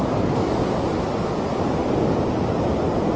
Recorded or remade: recorded